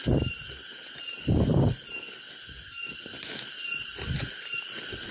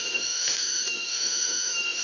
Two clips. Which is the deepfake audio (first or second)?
second